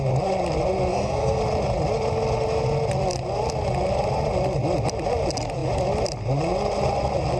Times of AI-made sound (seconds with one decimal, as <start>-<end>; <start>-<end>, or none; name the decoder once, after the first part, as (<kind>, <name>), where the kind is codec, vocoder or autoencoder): 0.9-1.4 (codec, SNAC)